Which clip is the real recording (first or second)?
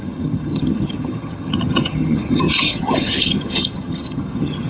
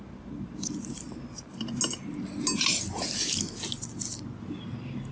second